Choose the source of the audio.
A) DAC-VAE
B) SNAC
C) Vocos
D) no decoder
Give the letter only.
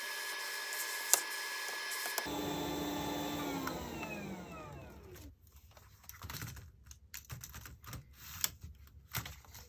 D